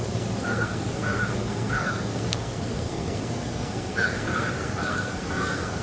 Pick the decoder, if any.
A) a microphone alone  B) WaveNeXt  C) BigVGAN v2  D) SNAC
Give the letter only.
D